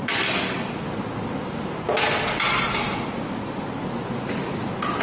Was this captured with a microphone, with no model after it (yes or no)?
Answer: yes